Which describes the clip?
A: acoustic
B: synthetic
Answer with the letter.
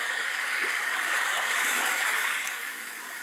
B